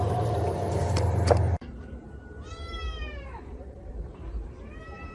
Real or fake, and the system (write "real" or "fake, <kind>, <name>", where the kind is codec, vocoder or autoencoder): fake, vocoder, BigVGAN v2